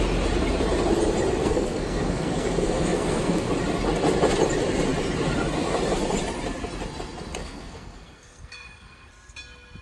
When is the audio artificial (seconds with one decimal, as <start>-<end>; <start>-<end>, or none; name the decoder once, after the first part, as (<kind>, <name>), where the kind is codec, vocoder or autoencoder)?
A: 1.4-3.5 (codec, SNAC); 7.4-9.1